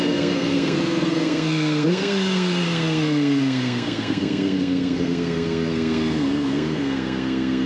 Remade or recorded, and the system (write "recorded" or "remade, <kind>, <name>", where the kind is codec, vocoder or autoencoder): remade, codec, SNAC